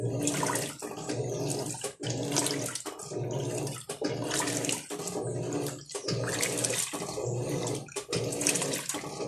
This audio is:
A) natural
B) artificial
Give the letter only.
A